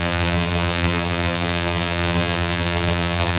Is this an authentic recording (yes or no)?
no